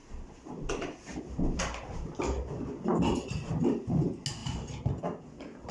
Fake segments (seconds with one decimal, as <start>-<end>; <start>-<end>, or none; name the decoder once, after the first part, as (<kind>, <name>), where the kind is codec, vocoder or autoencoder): none